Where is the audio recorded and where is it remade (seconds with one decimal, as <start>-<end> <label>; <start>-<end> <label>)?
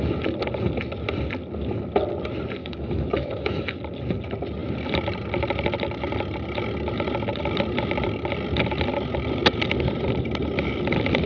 0.0-2.6 recorded; 2.6-3.8 remade; 3.8-11.3 recorded